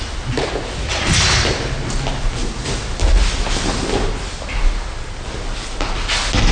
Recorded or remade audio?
recorded